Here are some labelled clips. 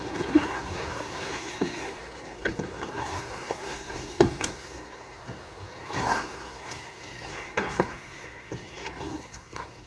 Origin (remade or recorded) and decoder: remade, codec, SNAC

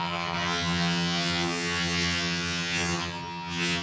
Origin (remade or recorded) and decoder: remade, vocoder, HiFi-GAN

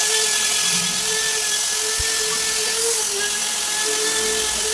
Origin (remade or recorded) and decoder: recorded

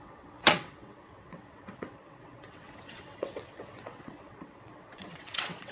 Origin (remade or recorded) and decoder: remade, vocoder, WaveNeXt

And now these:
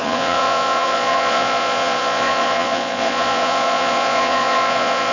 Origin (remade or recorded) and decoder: remade, vocoder, Vocos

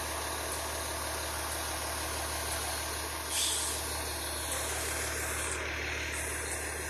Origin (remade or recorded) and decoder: recorded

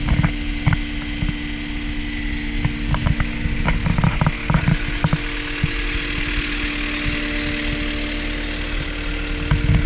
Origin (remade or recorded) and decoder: recorded